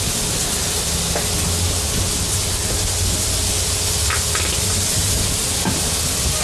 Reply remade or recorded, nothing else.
recorded